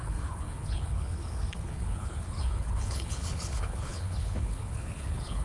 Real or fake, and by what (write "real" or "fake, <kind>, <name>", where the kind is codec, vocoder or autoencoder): fake, codec, HILCodec